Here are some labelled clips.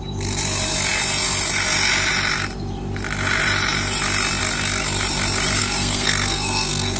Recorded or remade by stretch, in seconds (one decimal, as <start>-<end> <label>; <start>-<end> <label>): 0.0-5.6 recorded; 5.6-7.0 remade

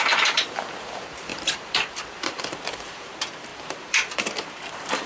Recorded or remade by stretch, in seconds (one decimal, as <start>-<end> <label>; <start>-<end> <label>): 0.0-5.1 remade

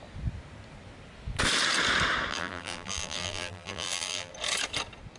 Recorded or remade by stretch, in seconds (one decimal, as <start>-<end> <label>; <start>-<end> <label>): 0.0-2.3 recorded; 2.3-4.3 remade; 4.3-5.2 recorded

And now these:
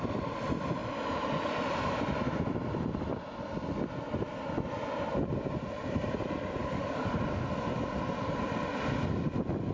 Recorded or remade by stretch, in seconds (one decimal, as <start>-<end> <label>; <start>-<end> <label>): 0.0-6.6 recorded; 6.6-7.2 remade; 7.2-9.7 recorded